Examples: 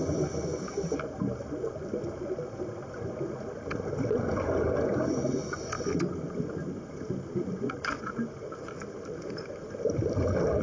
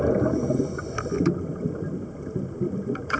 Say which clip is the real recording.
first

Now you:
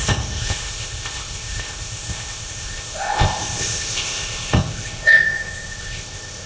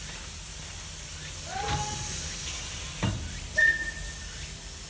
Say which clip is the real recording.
second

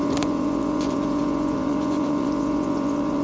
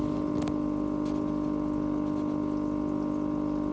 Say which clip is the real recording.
second